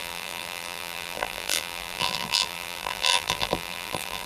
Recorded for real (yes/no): no